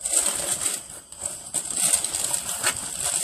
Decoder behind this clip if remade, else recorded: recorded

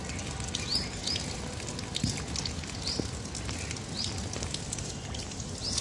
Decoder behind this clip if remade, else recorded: recorded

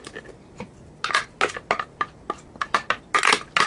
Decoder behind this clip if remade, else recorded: recorded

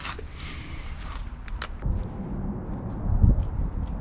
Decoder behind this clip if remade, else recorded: recorded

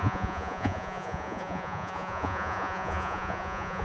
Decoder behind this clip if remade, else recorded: remade, vocoder, Vocos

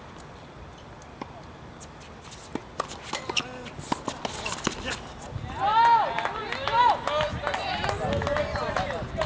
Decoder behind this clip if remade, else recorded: recorded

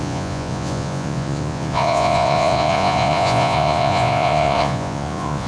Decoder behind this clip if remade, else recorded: remade, vocoder, Vocos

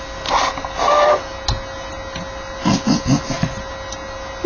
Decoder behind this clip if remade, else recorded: recorded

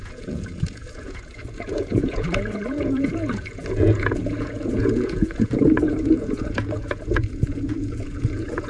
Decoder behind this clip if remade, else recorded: remade, vocoder, Vocos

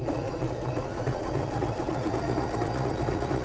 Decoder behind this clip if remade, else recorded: remade, vocoder, Vocos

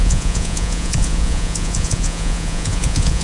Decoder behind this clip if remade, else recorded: remade, vocoder, Vocos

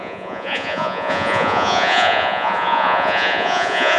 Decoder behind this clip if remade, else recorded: remade, vocoder, Vocos